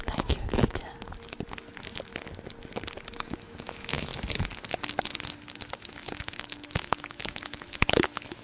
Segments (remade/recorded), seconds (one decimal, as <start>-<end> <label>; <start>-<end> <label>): 0.0-0.8 remade; 0.8-3.1 recorded; 3.1-4.1 remade; 4.1-5.9 recorded; 5.9-8.4 remade